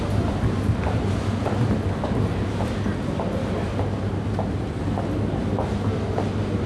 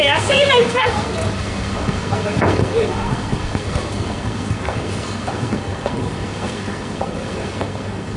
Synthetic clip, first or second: second